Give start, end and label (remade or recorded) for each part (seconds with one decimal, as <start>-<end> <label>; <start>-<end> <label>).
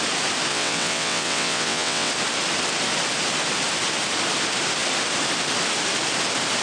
0.0-0.5 recorded; 0.5-2.1 remade; 2.1-6.6 recorded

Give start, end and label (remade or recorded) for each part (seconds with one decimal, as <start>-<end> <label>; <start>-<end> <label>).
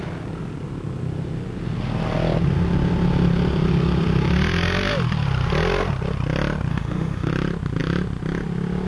0.0-6.7 recorded; 6.7-7.3 remade; 7.3-8.9 recorded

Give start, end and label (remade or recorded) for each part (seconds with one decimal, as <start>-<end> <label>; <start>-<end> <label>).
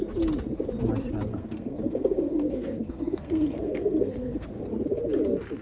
0.0-1.3 recorded; 1.3-4.6 remade; 4.6-5.6 recorded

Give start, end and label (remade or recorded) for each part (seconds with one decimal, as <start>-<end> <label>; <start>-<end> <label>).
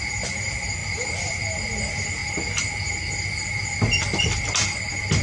0.0-5.2 recorded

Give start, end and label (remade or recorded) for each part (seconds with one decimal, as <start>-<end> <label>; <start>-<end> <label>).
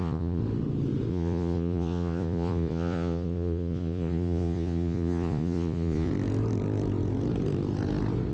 0.0-0.4 remade; 0.4-1.1 recorded; 1.1-6.1 remade; 6.1-8.3 recorded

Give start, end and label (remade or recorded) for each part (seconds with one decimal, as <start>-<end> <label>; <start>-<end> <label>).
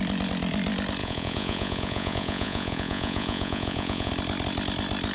0.0-1.0 recorded; 1.0-4.1 remade; 4.1-5.1 recorded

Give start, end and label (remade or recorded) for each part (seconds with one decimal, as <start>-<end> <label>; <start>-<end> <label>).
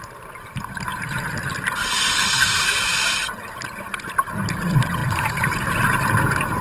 0.0-5.0 recorded; 5.0-6.6 remade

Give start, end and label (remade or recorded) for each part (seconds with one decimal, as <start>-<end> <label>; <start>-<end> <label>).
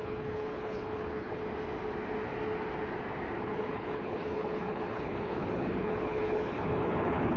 0.0-1.4 remade; 1.4-3.4 recorded; 3.4-7.4 remade